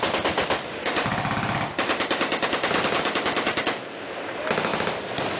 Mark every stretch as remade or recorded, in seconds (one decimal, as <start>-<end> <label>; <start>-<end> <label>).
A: 0.0-5.4 recorded